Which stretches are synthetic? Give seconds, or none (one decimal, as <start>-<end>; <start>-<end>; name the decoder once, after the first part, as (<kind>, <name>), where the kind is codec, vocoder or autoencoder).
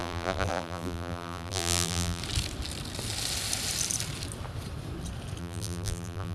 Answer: 0.0-2.2 (vocoder, BigVGAN v2); 5.4-6.3